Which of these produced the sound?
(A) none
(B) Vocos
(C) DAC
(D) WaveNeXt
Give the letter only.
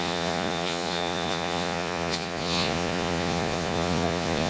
B